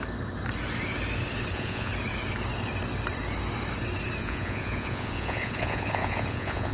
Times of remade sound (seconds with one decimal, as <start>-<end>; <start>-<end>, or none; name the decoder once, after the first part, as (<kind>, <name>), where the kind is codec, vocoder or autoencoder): 1.5-1.9 (vocoder, Vocos); 4.2-6.7